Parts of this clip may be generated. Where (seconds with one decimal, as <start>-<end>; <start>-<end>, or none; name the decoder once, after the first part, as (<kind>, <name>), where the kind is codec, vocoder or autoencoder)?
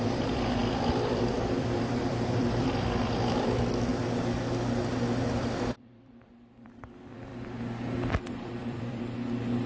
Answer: 0.0-0.6 (vocoder, BigVGAN v2); 1.3-3.9; 5.8-7.3; 8.1-9.7